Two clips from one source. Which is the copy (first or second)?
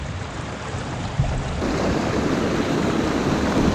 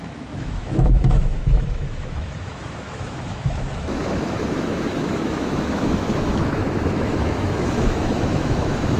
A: second